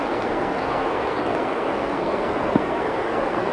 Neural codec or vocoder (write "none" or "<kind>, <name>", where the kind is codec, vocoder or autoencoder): codec, SNAC